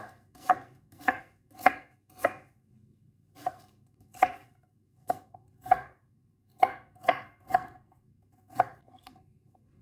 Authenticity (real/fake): fake